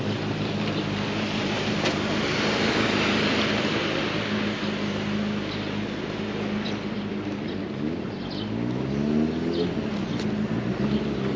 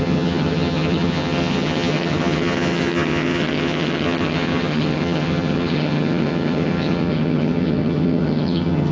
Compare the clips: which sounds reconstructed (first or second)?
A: second